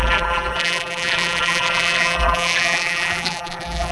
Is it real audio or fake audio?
fake